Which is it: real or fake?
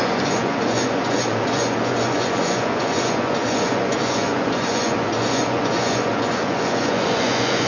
fake